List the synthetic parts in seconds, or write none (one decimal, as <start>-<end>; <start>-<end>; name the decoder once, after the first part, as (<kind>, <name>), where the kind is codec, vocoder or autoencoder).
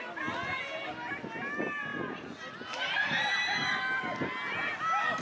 none